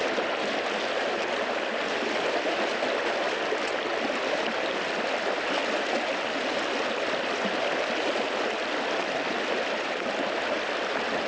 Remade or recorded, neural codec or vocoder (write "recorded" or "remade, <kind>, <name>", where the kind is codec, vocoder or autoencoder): recorded